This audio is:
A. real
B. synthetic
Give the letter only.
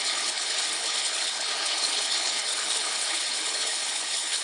B